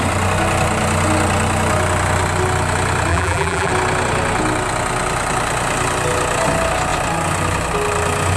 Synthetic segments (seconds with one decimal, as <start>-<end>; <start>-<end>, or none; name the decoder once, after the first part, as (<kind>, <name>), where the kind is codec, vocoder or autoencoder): 3.1-3.7 (vocoder, BigVGAN v2)